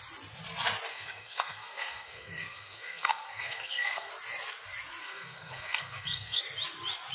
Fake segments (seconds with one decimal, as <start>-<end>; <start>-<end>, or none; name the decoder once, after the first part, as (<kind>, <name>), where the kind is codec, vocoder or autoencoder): 0.9-4.1 (codec, SNAC); 5.0-6.4